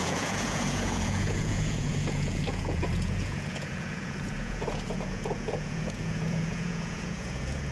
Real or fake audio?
fake